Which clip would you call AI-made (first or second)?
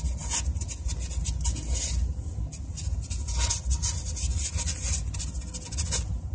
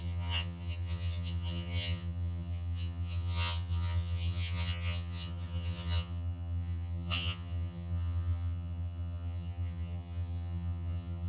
second